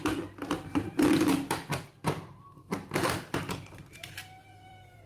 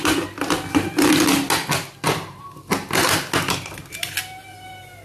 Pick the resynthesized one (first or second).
first